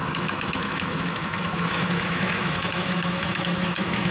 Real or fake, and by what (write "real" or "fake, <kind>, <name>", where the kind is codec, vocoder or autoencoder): fake, autoencoder, DAC-VAE